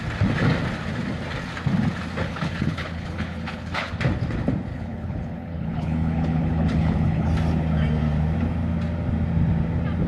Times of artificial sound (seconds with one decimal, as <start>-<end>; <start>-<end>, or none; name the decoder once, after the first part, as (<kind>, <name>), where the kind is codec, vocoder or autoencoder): 2.2-3.9 (codec, HILCodec); 4.7-7.3